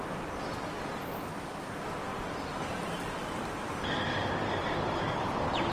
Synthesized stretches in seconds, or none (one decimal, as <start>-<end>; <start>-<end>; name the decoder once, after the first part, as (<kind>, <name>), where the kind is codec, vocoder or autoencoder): 2.1-5.7 (vocoder, BigVGAN v2)

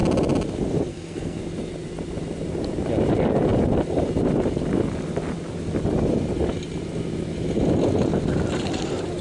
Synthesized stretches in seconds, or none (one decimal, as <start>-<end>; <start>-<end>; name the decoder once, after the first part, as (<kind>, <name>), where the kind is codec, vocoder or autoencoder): 0.9-1.4 (codec, SNAC)

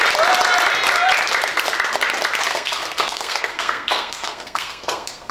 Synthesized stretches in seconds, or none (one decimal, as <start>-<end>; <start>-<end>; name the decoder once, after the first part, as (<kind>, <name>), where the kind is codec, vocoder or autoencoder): 2.5-5.3 (codec, SNAC)

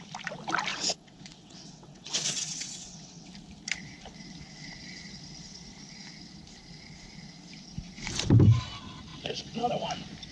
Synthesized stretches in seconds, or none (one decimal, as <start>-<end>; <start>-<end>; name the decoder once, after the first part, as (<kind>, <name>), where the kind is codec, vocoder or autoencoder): 0.7-3.3 (vocoder, WaveNeXt)

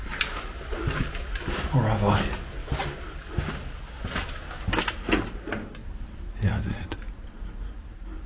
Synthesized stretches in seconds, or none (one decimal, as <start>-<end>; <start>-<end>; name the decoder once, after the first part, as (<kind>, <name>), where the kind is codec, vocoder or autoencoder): none

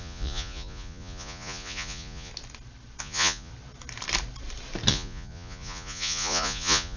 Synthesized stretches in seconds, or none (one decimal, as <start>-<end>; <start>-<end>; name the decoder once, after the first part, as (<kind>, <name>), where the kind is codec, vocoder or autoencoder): 0.0-2.3 (vocoder, Vocos); 3.0-3.5; 4.9-7.0